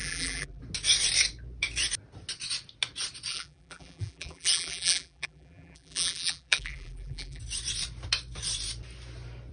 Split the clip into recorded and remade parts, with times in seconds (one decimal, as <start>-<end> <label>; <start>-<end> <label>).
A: 0.0-0.6 remade; 0.6-3.3 recorded; 3.3-7.4 remade; 7.4-9.5 recorded